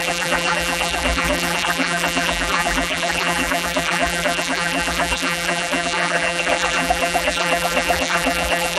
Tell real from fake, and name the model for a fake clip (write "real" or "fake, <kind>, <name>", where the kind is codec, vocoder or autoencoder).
fake, vocoder, BigVGAN v2